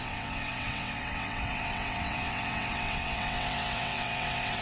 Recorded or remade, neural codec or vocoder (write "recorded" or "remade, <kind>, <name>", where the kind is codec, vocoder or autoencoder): remade, vocoder, WaveNeXt